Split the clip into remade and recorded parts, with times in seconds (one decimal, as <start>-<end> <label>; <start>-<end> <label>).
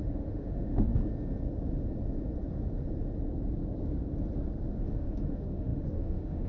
0.0-0.9 remade; 0.9-4.8 recorded; 4.8-6.5 remade